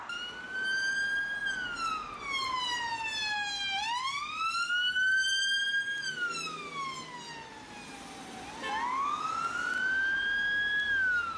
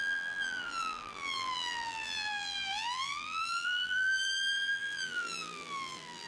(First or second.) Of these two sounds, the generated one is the second